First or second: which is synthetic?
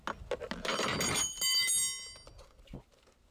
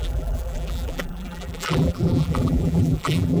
second